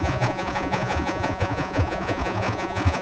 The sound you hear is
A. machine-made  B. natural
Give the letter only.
A